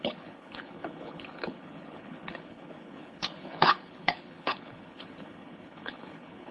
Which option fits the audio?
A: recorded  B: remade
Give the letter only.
B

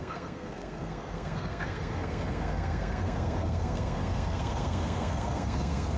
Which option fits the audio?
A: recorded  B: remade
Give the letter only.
B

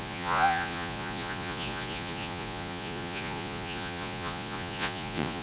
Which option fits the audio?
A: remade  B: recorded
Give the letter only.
A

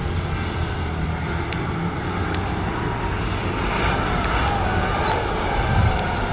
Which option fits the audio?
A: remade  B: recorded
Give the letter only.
B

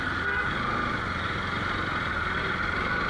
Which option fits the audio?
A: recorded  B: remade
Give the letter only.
A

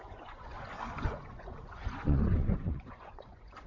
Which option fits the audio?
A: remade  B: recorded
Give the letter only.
A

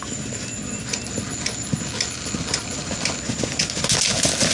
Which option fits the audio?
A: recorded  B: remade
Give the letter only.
A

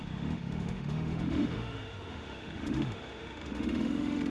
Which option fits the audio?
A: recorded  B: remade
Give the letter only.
B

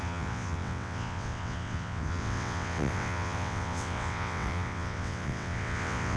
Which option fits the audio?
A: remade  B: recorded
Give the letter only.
A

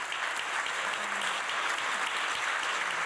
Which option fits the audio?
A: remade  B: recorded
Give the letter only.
B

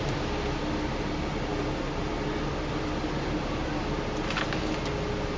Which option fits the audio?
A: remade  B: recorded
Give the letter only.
B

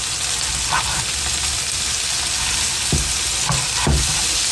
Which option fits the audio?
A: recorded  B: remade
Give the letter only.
A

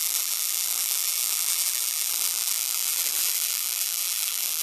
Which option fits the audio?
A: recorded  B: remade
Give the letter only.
B